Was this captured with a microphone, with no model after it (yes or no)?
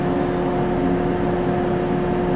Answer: yes